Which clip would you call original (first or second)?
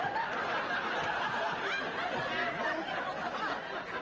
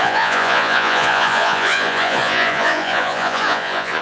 first